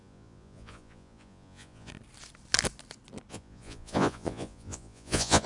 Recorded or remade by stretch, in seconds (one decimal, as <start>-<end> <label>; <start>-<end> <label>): 0.0-1.9 remade; 1.9-3.3 recorded; 3.3-5.5 remade